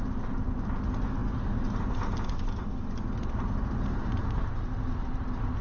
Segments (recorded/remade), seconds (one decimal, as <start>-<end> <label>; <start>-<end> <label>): 0.0-5.6 recorded